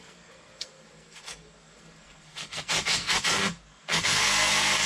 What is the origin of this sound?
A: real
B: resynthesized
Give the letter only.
B